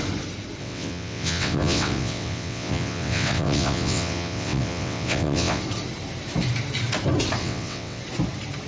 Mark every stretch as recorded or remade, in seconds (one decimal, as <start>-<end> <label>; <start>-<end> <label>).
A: 0.0-0.6 recorded; 0.6-5.6 remade; 5.6-7.4 recorded; 7.4-8.0 remade; 8.0-8.7 recorded

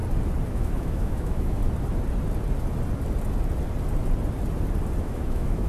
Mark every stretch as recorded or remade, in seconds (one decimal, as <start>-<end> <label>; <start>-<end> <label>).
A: 0.0-0.5 recorded; 0.5-1.6 remade; 1.6-5.0 recorded; 5.0-5.7 remade

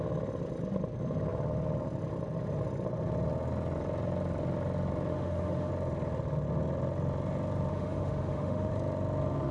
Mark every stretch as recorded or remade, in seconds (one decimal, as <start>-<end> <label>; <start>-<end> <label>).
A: 0.0-5.1 recorded; 5.1-5.7 remade; 5.7-7.7 recorded; 7.7-8.7 remade; 8.7-9.5 recorded

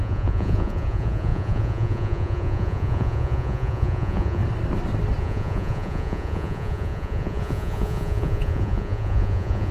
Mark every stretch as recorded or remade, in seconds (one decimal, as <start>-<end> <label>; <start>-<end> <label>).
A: 0.0-4.4 remade; 4.4-5.2 recorded; 5.2-9.7 remade

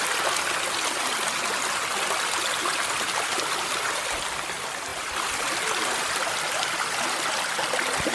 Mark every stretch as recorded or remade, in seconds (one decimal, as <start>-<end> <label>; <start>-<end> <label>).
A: 0.0-4.9 recorded; 4.9-7.0 remade; 7.0-8.1 recorded